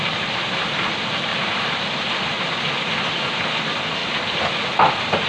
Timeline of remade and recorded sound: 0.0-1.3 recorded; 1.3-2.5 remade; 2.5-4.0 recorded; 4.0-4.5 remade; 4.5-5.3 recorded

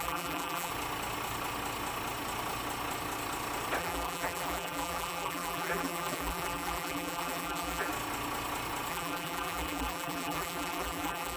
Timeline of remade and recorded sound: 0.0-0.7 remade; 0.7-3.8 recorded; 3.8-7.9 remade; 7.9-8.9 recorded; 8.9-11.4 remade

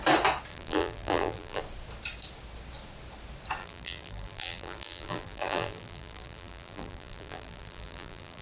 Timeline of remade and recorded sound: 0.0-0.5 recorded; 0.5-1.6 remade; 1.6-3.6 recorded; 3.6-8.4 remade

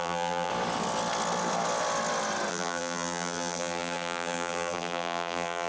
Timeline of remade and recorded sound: 0.0-0.5 remade; 0.5-2.5 recorded; 2.5-5.7 remade

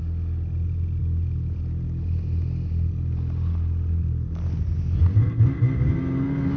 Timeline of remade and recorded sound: 0.0-6.6 recorded

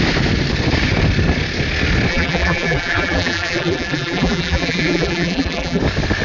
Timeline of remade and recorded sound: 0.0-2.1 recorded; 2.1-5.8 remade; 5.8-6.2 recorded

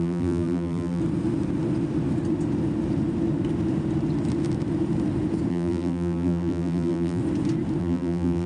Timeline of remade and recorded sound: 0.0-1.0 remade; 1.0-5.5 recorded; 5.5-7.2 remade; 7.2-7.8 recorded; 7.8-8.5 remade

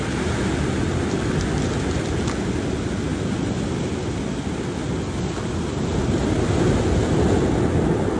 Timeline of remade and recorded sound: 0.0-8.2 recorded